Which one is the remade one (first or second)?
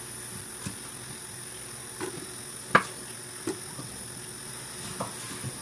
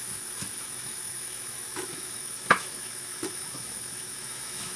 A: second